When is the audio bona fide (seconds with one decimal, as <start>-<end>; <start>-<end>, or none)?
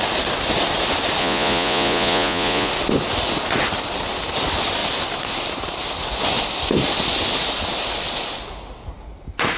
0.0-1.2; 2.7-9.6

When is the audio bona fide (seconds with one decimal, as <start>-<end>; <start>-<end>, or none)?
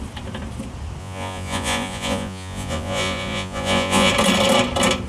0.0-1.0; 4.1-5.1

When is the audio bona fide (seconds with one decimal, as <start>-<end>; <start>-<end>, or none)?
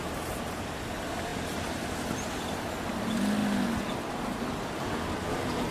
0.0-5.7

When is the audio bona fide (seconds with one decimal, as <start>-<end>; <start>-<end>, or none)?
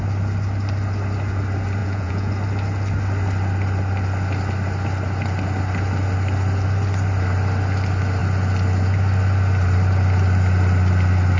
0.0-1.8; 2.3-11.4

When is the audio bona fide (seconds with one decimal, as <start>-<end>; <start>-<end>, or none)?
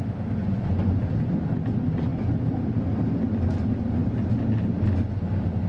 0.0-0.4; 1.0-5.7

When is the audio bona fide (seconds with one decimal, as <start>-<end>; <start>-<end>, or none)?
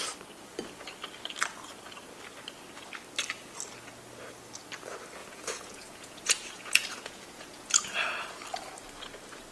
0.0-5.2; 8.1-9.5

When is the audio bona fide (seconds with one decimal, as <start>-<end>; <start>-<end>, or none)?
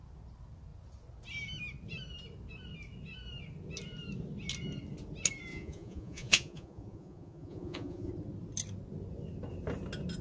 0.0-5.5; 8.1-10.2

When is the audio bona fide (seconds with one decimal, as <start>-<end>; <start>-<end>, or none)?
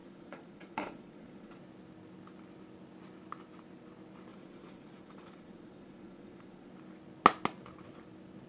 1.6-4.3; 6.7-8.5